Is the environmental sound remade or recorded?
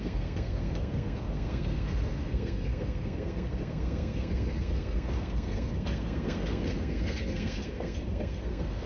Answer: remade